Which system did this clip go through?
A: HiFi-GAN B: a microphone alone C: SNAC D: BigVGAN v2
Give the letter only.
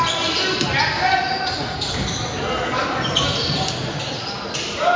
B